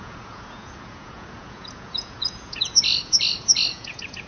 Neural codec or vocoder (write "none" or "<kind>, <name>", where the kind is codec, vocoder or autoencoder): vocoder, Vocos